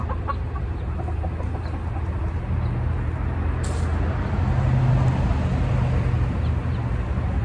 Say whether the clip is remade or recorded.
recorded